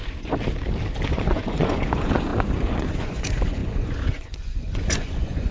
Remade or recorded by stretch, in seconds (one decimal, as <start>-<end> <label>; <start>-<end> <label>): 0.0-1.1 recorded; 1.1-5.5 remade